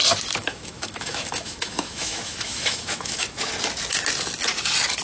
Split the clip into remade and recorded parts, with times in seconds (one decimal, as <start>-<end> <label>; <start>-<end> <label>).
0.0-0.4 recorded; 0.4-3.4 remade; 3.4-5.0 recorded